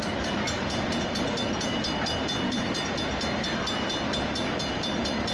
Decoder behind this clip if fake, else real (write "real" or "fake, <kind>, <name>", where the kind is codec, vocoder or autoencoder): real